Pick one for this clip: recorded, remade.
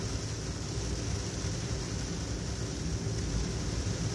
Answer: recorded